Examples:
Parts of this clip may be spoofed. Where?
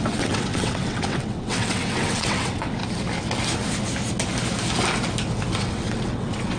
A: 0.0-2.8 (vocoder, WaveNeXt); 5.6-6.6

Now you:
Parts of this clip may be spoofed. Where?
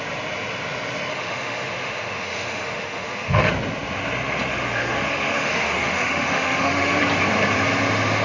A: 1.1-3.5 (autoencoder, DAC-VAE); 4.5-7.0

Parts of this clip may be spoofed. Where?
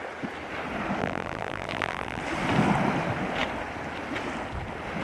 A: 1.0-2.2 (vocoder, BigVGAN v2)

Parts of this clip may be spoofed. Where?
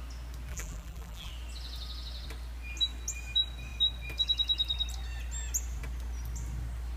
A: 0.5-1.3 (vocoder, BigVGAN v2)